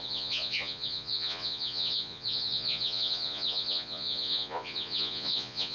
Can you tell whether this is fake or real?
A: fake